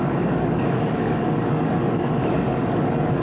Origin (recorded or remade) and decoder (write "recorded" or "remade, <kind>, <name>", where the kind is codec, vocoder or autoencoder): remade, codec, DAC